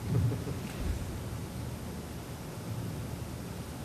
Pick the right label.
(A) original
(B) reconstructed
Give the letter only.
A